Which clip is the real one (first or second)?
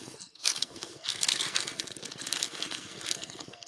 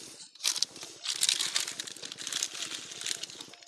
second